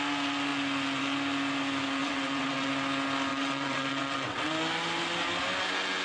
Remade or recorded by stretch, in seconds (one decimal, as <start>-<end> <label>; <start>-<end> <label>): 0.0-2.0 recorded; 2.0-2.7 remade; 2.7-3.3 recorded; 3.3-4.5 remade; 4.5-6.0 recorded